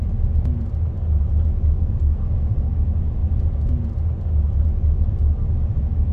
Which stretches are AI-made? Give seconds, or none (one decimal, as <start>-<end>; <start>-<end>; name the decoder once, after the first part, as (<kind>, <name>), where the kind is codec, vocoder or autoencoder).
1.8-2.7 (codec, SNAC)